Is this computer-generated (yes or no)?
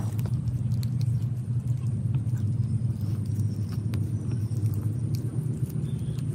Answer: no